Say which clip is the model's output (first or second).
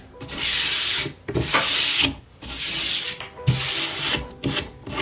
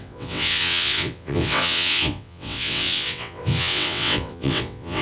second